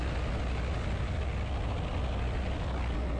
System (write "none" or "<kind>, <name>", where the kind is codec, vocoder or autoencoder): none